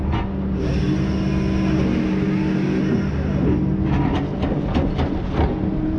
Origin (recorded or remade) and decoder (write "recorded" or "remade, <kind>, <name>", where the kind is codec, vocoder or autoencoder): recorded